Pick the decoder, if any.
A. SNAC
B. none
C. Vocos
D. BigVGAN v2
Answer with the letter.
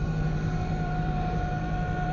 D